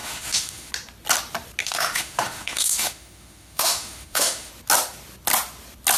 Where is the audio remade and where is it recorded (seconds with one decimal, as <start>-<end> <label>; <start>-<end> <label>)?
0.0-0.7 remade; 0.7-1.6 recorded; 1.6-4.5 remade; 4.5-6.0 recorded